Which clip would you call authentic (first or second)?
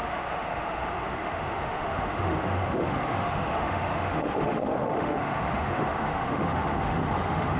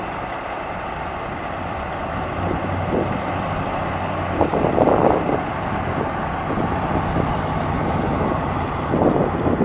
second